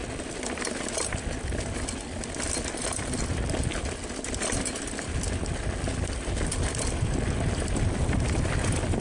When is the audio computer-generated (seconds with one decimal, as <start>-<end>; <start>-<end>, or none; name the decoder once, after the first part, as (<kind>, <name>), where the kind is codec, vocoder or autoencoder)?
4.8-9.0 (vocoder, BigVGAN v2)